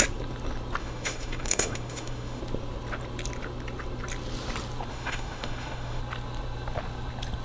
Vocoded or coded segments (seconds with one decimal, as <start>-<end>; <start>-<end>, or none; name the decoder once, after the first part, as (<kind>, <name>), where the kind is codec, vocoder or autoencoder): 0.8-2.4 (autoencoder, DAC-VAE); 4.9-6.0

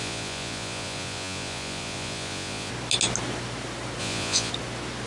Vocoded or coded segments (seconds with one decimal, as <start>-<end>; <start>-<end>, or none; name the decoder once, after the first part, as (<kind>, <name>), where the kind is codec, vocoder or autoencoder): 0.0-2.7 (vocoder, Vocos); 4.0-4.5

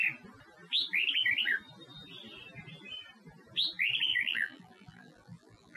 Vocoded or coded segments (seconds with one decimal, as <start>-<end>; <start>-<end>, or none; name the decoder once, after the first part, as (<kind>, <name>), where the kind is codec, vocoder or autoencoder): 4.1-5.8 (vocoder, BigVGAN v2)

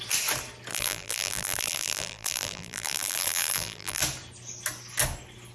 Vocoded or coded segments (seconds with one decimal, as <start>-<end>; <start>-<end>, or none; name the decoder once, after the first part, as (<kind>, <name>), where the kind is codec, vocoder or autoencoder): 0.7-4.0 (vocoder, BigVGAN v2)

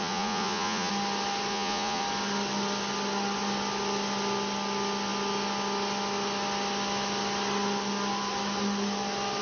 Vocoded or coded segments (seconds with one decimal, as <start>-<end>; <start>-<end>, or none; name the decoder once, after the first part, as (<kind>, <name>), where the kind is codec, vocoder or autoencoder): 0.0-0.9 (vocoder, Vocos); 1.5-2.0

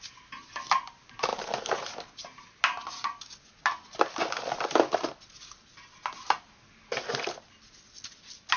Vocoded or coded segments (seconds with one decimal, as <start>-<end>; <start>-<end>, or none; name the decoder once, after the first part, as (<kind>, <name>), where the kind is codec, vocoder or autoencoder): none